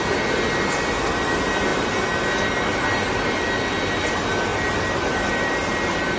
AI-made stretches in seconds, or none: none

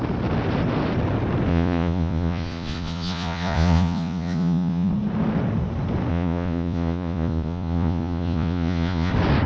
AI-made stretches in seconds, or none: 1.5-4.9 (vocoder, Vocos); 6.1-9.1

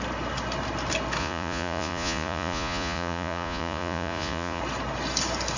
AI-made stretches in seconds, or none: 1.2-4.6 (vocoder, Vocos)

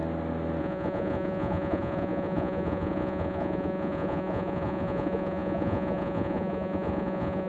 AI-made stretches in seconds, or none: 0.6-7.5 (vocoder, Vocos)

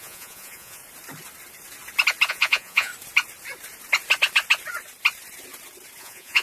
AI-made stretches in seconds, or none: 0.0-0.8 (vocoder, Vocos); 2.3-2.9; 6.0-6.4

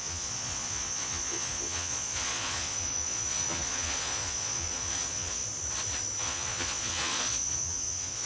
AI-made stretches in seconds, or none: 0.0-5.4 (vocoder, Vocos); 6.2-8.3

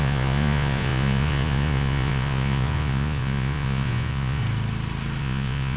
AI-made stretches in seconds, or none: 0.0-4.4 (vocoder, Vocos); 5.2-5.8

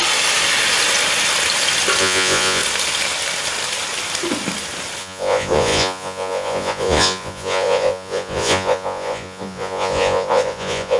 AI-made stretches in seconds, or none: 2.0-2.6 (vocoder, Vocos); 5.0-11.0